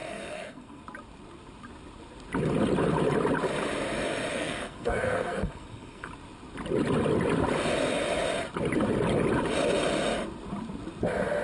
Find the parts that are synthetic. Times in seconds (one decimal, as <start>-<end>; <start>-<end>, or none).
0.0-0.8; 4.3-6.1